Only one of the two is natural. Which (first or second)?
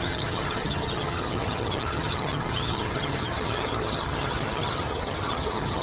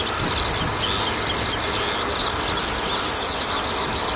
second